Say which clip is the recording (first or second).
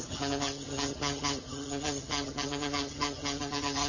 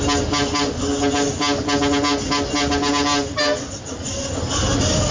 second